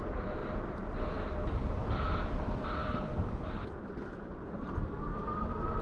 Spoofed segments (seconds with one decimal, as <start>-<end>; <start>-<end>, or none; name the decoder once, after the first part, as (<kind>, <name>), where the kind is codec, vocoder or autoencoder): 0.0-5.8 (vocoder, BigVGAN v2)